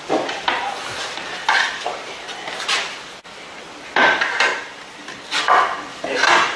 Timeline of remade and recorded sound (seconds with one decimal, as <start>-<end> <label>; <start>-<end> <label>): 0.0-6.6 recorded